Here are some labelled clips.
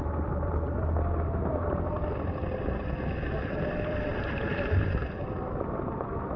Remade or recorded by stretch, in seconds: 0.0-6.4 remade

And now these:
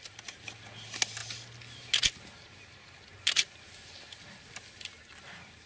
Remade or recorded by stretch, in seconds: 0.0-5.7 recorded

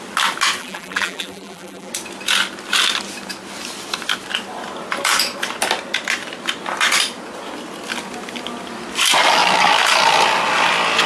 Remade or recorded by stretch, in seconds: 0.0-0.6 recorded; 0.6-1.9 remade; 1.9-11.1 recorded

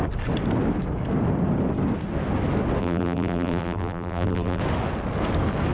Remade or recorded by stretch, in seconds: 0.0-2.8 recorded; 2.8-4.6 remade; 4.6-5.7 recorded

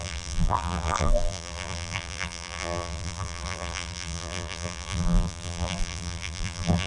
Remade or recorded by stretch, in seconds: 0.0-6.9 remade

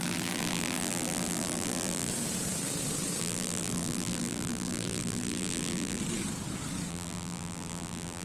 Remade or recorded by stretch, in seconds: 0.0-2.1 remade; 2.1-3.2 recorded; 3.2-6.0 remade; 6.0-6.9 recorded; 6.9-8.2 remade